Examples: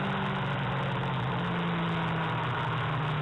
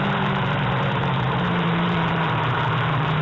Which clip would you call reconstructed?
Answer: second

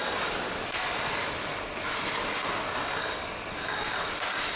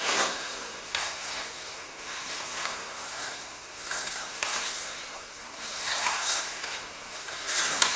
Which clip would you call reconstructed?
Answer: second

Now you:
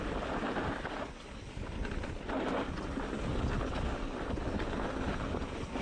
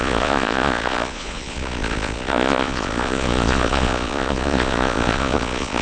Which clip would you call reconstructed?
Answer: second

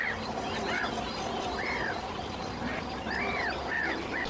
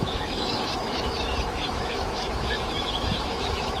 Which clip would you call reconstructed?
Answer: second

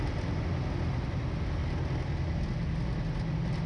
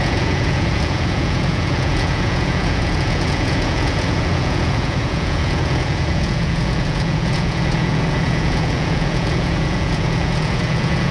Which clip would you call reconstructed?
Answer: second